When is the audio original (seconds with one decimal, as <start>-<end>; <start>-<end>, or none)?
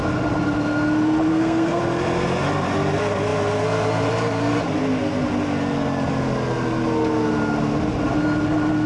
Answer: 0.0-1.3; 1.8-8.9